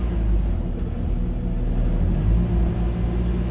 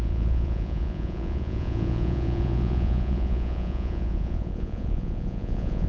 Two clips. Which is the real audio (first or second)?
first